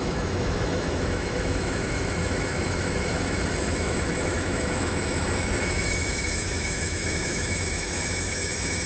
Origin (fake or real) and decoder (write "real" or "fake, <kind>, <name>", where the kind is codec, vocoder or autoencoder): fake, autoencoder, DAC-VAE